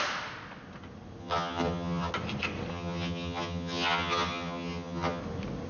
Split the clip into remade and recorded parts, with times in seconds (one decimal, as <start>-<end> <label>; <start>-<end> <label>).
0.0-1.2 recorded; 1.2-2.1 remade; 2.1-2.7 recorded; 2.7-5.2 remade; 5.2-5.7 recorded